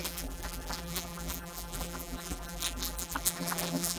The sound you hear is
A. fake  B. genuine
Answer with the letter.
A